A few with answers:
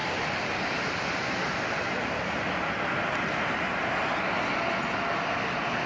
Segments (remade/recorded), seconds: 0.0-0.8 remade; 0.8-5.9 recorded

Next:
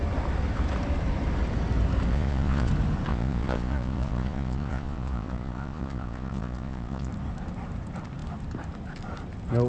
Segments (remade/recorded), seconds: 0.0-2.1 recorded; 2.1-2.7 remade; 2.7-3.1 recorded; 3.1-7.1 remade; 7.1-9.7 recorded

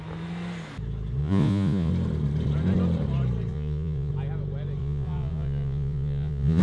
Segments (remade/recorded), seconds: 0.0-1.2 recorded; 1.2-1.9 remade; 1.9-3.5 recorded; 3.5-4.1 remade; 4.1-4.8 recorded; 4.8-6.6 remade

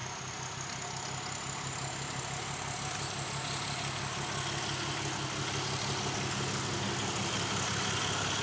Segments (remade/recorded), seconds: 0.0-8.4 recorded

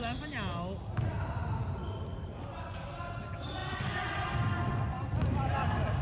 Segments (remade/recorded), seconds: 0.0-6.0 recorded

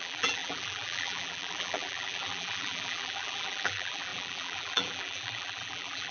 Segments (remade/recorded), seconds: 0.0-6.1 remade

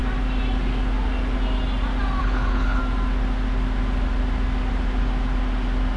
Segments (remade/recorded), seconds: 0.0-2.2 recorded; 2.2-2.8 remade; 2.8-6.0 recorded